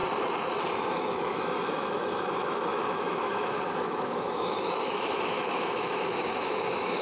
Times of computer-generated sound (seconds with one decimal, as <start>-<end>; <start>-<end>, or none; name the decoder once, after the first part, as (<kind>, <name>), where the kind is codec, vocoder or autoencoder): 0.9-7.0 (autoencoder, DAC-VAE)